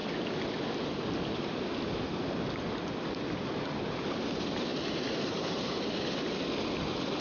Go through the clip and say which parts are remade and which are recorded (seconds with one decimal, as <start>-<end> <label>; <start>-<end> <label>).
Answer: 0.0-4.3 recorded; 4.3-7.2 remade